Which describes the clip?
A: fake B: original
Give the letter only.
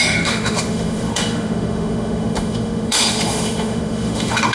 A